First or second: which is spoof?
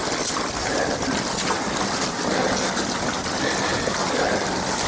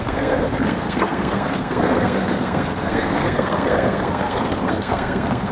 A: second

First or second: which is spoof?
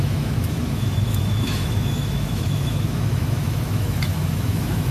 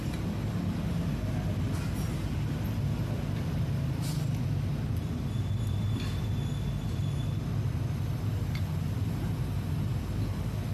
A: first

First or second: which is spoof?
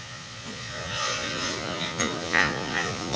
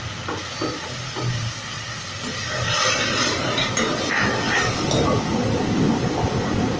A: first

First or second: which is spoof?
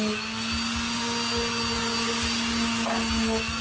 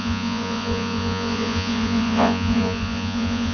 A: second